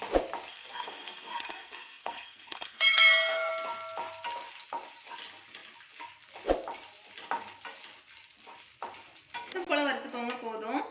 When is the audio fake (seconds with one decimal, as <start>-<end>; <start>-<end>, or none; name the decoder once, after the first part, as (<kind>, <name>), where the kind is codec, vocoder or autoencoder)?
0.5-3.5 (codec, SNAC)